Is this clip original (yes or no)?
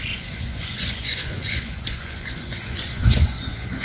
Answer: no